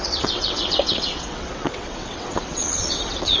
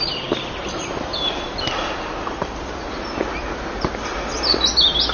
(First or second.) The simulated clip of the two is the first